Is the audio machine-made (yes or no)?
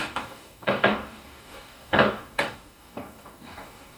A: yes